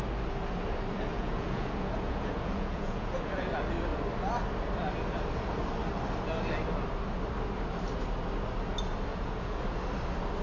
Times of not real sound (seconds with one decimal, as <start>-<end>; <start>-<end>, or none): 1.1-3.5; 9.1-9.6